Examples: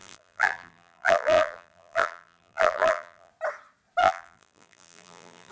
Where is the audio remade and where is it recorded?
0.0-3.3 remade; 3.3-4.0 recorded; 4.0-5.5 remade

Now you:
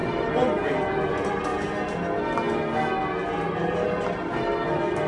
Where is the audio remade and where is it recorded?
0.0-1.5 remade; 1.5-3.4 recorded; 3.4-4.5 remade; 4.5-5.1 recorded

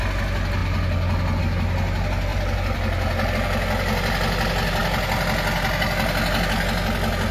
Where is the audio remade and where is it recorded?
0.0-2.3 recorded; 2.3-3.3 remade; 3.3-7.3 recorded

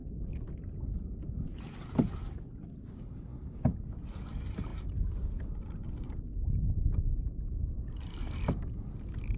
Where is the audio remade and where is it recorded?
0.0-9.4 recorded